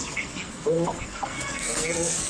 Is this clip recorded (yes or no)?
no